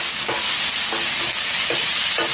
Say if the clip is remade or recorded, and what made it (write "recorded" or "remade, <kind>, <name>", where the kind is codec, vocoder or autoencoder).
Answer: recorded